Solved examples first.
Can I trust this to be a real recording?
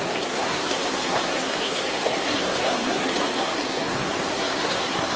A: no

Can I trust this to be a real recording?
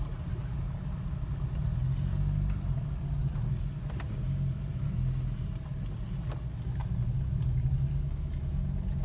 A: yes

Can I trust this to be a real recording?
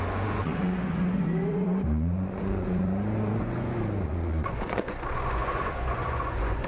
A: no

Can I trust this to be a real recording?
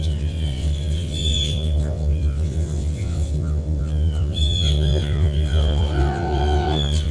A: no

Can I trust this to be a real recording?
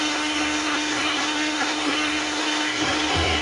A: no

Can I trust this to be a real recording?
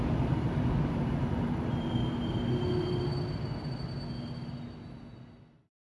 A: yes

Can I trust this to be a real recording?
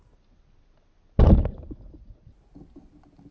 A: yes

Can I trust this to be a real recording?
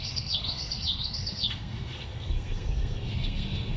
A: no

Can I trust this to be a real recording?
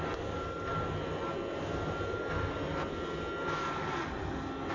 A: yes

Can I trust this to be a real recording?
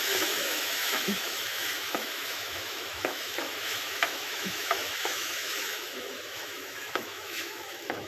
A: no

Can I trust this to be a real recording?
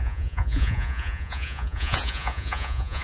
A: no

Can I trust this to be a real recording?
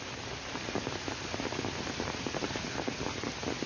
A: yes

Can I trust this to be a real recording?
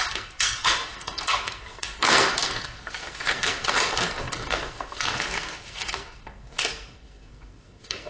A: no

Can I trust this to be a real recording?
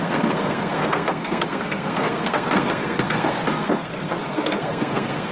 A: no